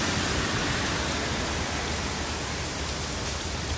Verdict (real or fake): real